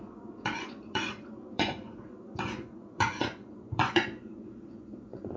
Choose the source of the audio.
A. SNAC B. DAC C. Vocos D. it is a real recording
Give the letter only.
C